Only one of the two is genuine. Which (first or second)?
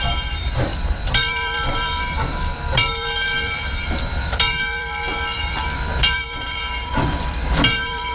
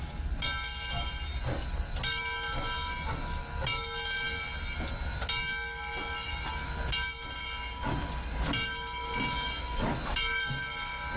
second